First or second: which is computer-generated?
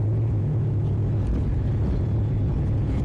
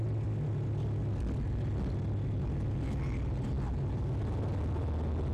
first